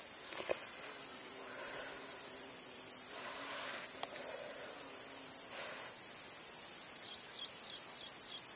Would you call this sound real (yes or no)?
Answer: yes